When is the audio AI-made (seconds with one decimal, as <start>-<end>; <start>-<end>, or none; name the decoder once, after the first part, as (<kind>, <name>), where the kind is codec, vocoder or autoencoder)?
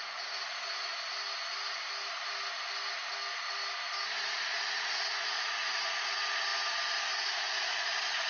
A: 0.0-0.9 (vocoder, Vocos); 4.3-6.5; 7.0-8.3